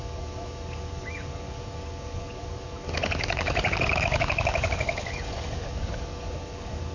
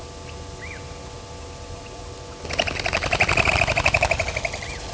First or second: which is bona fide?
second